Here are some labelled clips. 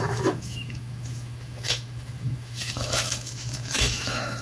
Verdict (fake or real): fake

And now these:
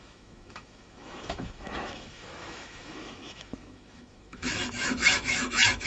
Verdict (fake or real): fake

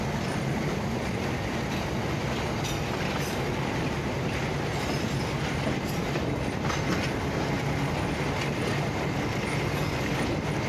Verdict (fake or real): real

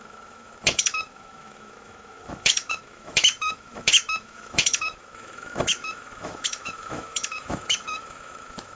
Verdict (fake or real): fake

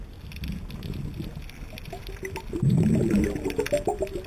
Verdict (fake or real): real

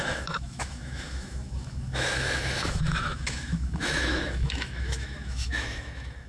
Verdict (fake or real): fake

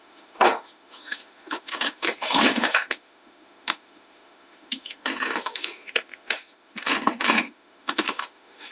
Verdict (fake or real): fake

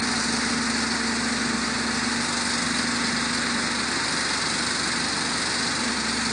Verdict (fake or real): real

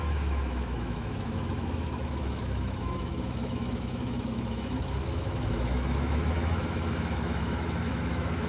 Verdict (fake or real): fake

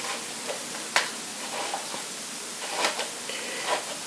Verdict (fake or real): real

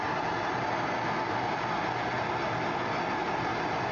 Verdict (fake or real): real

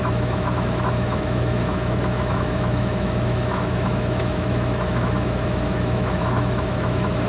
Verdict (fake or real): fake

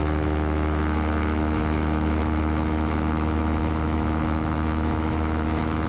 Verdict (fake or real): fake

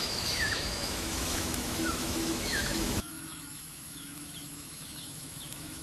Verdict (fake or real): fake